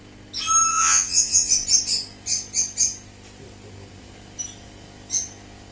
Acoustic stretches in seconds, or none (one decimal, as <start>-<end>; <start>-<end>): 0.0-0.7; 1.5-5.7